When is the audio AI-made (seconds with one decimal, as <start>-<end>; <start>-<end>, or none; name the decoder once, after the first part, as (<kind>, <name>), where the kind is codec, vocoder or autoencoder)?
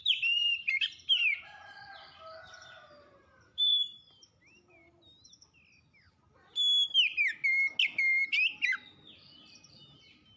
0.0-5.2 (vocoder, BigVGAN v2)